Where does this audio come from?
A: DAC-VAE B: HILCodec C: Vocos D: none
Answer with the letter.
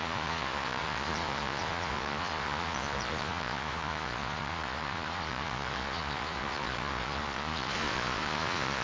C